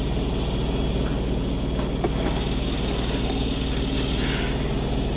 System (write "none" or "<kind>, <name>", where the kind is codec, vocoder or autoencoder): none